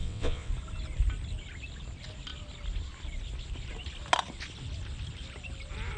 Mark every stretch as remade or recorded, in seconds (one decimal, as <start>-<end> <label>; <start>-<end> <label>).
0.0-0.5 remade; 0.5-6.0 recorded

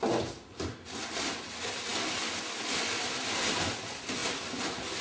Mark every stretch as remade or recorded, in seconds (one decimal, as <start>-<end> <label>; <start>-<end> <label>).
0.0-5.0 recorded

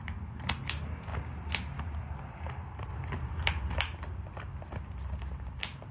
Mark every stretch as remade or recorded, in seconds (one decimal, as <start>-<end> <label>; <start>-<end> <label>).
0.0-5.9 recorded